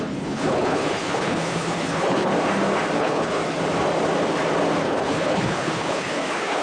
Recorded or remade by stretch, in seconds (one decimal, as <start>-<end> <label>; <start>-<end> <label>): 0.0-2.3 remade; 2.3-3.0 recorded; 3.0-3.4 remade; 3.4-4.8 recorded; 4.8-6.6 remade